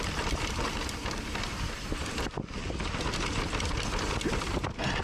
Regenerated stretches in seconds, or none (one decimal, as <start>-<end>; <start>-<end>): 1.5-2.3

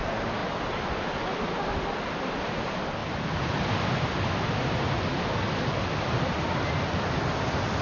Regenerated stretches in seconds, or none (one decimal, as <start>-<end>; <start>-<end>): 3.0-3.8

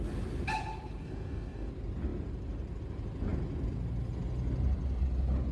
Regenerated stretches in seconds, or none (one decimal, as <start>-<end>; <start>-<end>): 1.0-1.7

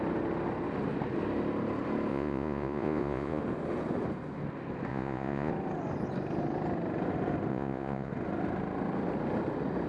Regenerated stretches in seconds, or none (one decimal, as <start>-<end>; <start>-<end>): 2.1-3.4; 4.9-5.5; 7.5-8.1

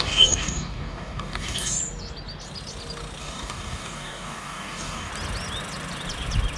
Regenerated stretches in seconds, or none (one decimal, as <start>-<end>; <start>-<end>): 0.0-1.8; 3.2-5.1

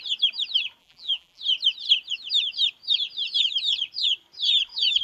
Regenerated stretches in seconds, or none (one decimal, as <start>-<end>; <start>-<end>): 0.8-1.4

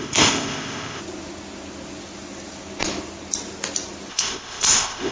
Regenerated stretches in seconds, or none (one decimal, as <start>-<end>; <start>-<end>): 0.0-1.0; 4.1-5.1